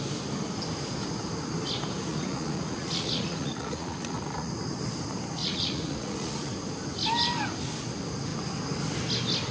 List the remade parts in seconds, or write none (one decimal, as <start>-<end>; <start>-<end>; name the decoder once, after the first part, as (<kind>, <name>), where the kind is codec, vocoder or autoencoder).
2.1-4.5 (vocoder, Vocos); 5.4-6.5

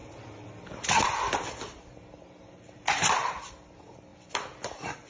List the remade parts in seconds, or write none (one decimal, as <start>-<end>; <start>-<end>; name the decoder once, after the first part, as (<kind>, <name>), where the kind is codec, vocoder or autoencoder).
none

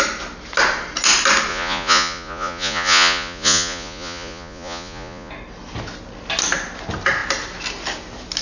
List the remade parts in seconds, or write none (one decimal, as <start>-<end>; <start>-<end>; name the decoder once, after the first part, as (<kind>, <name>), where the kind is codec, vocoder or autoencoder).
1.5-5.3 (vocoder, Vocos)

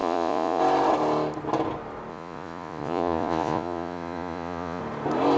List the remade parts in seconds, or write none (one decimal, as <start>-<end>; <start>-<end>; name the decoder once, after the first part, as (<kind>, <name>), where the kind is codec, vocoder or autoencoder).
0.0-0.6 (vocoder, Vocos); 2.1-4.8

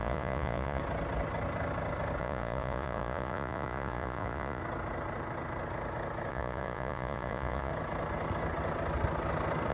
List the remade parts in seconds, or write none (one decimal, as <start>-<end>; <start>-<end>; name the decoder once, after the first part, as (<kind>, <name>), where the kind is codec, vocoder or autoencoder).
0.0-0.8 (vocoder, Vocos); 2.2-4.6; 6.3-7.7